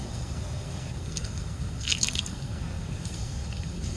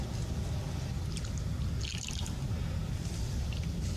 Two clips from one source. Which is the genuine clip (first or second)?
second